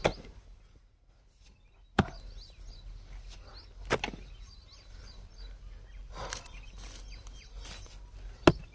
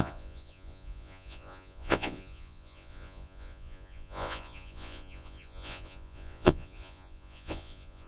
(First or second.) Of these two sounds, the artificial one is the second